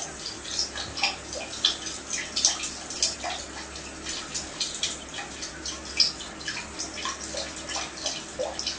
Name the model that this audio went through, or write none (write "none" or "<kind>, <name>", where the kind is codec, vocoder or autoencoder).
none